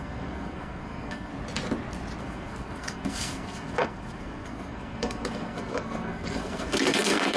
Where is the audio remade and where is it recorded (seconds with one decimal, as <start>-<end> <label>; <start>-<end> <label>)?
0.0-1.3 remade; 1.3-2.2 recorded; 2.2-7.4 remade